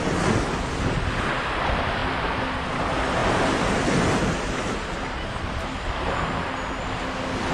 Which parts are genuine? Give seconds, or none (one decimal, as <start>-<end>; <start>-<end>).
0.0-7.5